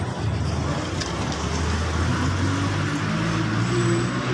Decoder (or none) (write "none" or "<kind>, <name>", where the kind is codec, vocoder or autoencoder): none